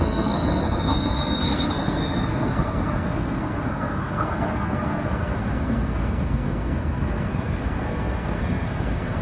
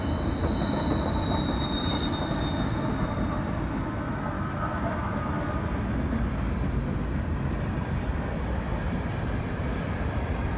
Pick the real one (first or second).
second